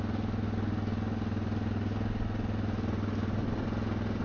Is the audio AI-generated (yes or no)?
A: no